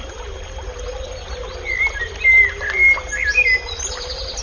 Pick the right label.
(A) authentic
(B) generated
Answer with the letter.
A